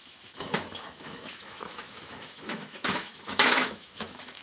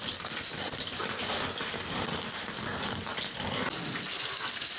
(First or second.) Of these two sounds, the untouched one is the second